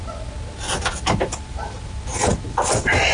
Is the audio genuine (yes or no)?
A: yes